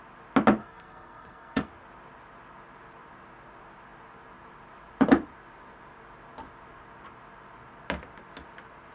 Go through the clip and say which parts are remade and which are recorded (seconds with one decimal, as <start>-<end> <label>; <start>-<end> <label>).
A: 0.0-0.6 recorded; 0.6-1.7 remade; 1.7-8.9 recorded